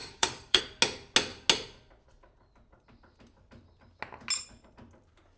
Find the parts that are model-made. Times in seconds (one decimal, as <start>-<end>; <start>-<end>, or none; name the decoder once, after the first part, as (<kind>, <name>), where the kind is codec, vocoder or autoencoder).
0.0-0.6 (codec, DAC)